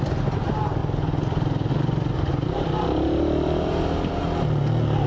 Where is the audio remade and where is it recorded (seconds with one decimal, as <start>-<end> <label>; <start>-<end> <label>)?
0.0-2.3 recorded; 2.3-4.2 remade; 4.2-5.1 recorded